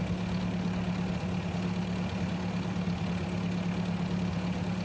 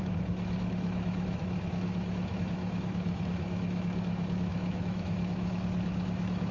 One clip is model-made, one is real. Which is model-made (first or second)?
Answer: second